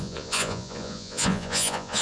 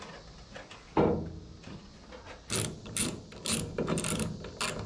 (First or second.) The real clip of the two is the second